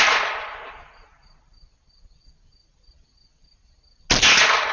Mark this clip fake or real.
real